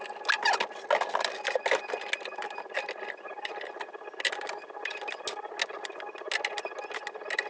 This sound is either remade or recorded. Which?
recorded